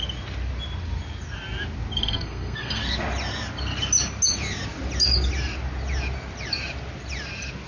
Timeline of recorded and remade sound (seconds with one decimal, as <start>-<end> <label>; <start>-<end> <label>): 0.0-2.0 recorded; 2.0-2.8 remade; 2.8-7.7 recorded